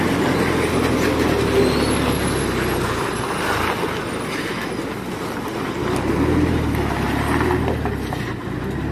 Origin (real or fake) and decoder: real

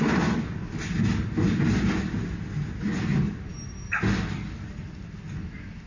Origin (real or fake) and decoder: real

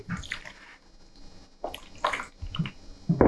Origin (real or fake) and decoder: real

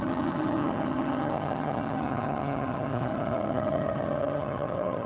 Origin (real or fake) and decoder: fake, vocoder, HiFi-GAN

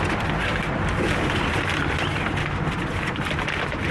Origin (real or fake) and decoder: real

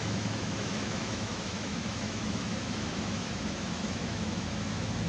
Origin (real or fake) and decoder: fake, autoencoder, DAC-VAE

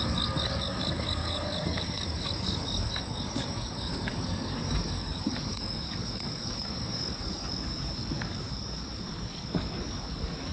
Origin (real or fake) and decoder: fake, codec, DAC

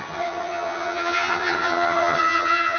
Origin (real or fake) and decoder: fake, vocoder, HiFi-GAN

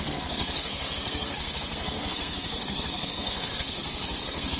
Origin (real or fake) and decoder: fake, codec, SNAC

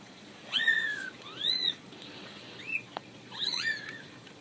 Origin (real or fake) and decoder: fake, vocoder, Vocos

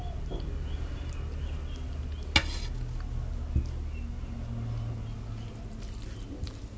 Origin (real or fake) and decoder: real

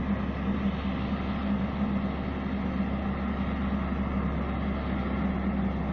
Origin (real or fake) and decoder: real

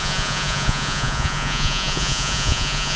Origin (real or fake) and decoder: fake, vocoder, Vocos